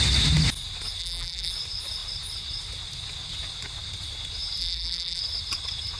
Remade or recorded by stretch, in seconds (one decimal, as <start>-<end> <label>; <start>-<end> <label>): 0.0-1.0 recorded; 1.0-1.5 remade; 1.5-4.6 recorded; 4.6-5.2 remade; 5.2-6.0 recorded